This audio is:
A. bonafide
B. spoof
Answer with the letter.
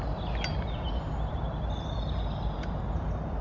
A